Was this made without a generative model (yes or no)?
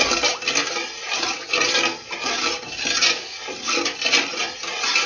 yes